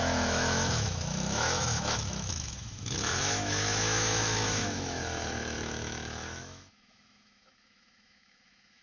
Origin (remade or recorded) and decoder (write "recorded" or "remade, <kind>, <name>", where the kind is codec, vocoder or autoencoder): remade, autoencoder, DAC-VAE